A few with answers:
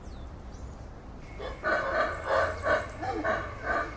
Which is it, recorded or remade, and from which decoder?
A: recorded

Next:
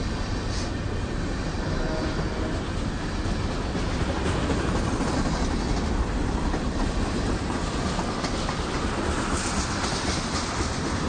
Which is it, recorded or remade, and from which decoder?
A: recorded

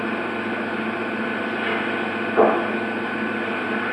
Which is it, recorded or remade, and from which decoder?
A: recorded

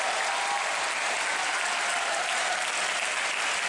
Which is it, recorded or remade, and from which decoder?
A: recorded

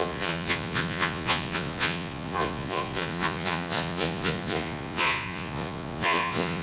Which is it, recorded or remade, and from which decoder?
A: remade, vocoder, Vocos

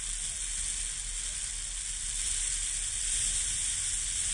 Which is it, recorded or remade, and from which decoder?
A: recorded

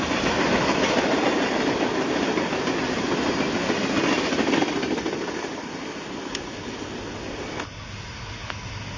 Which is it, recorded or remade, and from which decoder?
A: recorded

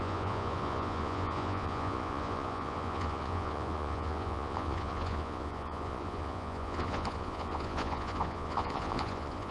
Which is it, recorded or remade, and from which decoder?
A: remade, vocoder, Vocos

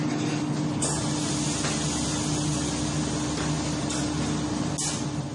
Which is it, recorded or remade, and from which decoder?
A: recorded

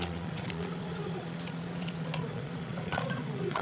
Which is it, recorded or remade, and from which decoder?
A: remade, vocoder, Vocos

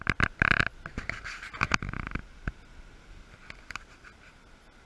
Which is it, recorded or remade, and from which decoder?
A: recorded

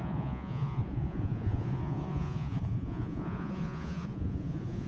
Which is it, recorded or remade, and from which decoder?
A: remade, vocoder, Vocos